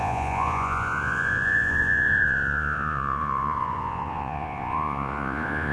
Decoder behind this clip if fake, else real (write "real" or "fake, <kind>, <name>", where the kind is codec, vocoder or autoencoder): fake, vocoder, Vocos